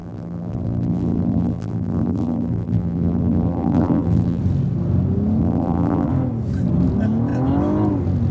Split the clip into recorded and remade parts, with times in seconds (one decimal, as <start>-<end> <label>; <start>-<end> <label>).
0.0-4.4 remade; 4.4-5.4 recorded; 5.4-6.1 remade; 6.1-8.3 recorded